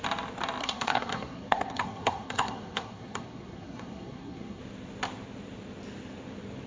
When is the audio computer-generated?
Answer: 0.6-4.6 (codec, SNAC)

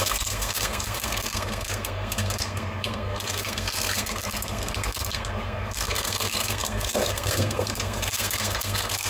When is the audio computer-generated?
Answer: 0.0-9.1 (codec, SNAC)

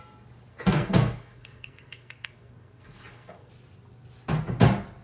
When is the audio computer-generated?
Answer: 0.5-3.5 (codec, SNAC)

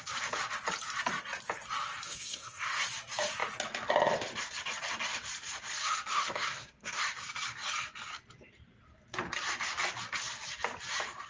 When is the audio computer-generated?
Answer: 2.1-2.8 (codec, SNAC); 6.1-7.0

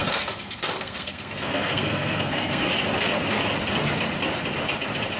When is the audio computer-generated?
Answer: 0.0-2.7 (codec, SNAC)

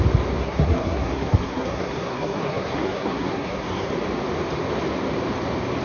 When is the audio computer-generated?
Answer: 0.4-3.9 (codec, SNAC)